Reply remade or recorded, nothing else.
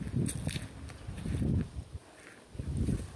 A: recorded